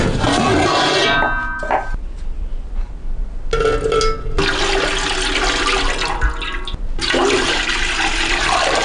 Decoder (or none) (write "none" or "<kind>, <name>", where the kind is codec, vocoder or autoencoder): none